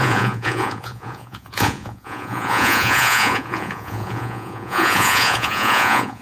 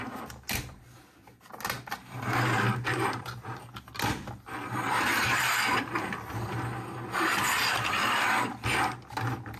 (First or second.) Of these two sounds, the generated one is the first